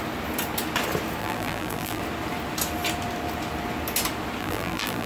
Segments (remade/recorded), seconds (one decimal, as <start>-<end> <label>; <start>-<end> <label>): 0.0-1.2 recorded; 1.2-2.0 remade; 2.0-4.4 recorded; 4.4-5.1 remade